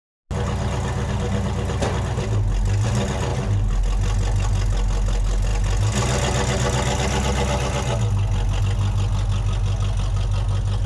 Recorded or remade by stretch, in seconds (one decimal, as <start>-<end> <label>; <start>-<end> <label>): 0.0-3.3 recorded; 3.3-3.8 remade; 3.8-10.9 recorded